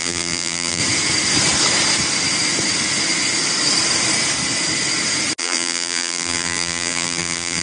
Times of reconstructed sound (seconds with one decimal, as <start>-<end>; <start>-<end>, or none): 0.0-0.8; 5.4-7.6